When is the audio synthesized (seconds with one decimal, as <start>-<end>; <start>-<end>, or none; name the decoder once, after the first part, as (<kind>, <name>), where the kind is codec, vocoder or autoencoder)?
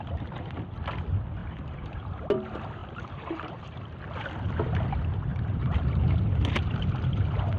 1.4-2.1 (vocoder, BigVGAN v2); 2.8-3.8; 5.3-6.0